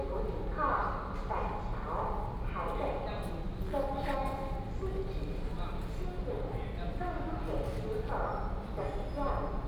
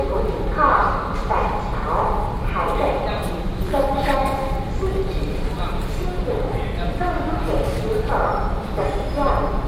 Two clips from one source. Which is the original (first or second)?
first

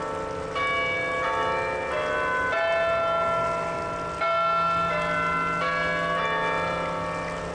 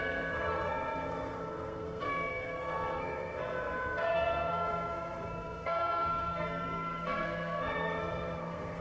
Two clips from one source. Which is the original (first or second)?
first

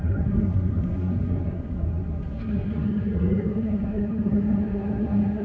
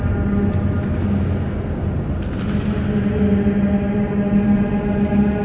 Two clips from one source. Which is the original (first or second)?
second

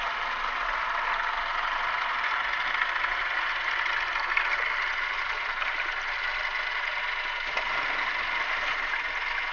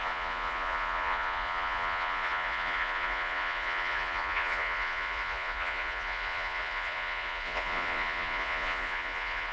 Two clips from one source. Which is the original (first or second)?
first